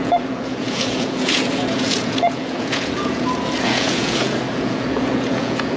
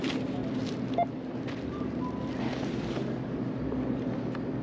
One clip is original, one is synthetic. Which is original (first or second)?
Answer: second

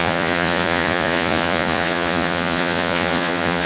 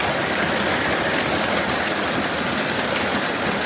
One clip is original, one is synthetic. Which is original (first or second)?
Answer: second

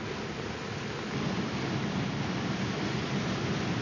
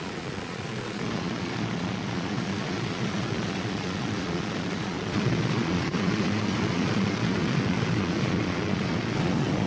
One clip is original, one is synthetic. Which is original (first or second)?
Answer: first